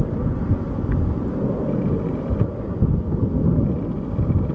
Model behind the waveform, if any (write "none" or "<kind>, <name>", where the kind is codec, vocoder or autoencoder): none